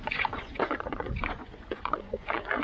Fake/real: fake